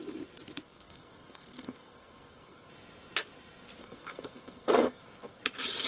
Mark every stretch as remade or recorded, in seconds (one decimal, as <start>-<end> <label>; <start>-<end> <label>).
0.0-0.6 recorded; 0.6-2.7 remade; 2.7-3.8 recorded; 3.8-5.4 remade; 5.4-5.9 recorded